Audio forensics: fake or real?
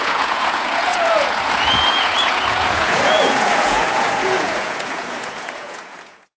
fake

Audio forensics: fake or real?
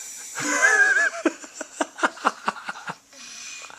fake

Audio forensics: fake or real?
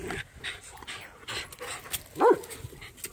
real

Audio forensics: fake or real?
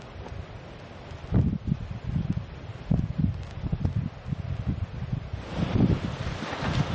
real